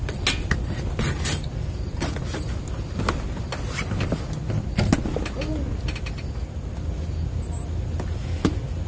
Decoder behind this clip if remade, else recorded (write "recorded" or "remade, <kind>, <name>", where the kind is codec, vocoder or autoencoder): recorded